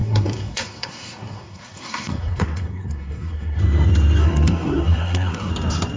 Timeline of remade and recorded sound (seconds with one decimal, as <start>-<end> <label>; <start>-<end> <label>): 0.0-3.6 remade; 3.6-4.2 recorded; 4.2-5.5 remade; 5.5-6.0 recorded